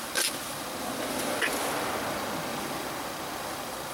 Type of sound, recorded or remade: recorded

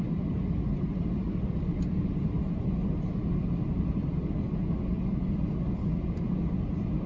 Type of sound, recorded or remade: recorded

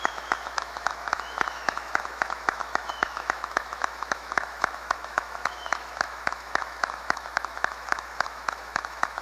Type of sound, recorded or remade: remade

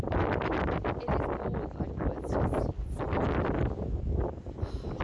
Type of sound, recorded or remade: recorded